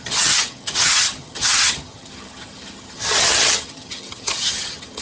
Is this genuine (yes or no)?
no